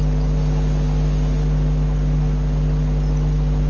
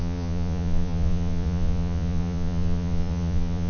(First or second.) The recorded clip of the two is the first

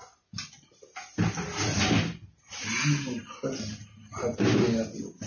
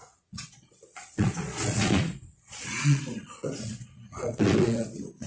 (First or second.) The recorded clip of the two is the first